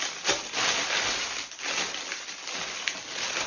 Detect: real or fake real